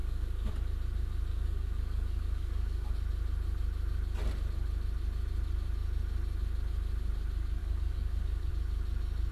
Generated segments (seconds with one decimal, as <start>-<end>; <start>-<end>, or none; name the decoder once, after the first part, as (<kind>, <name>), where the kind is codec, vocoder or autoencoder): 0.0-0.5 (codec, DAC); 1.3-2.9; 7.6-8.5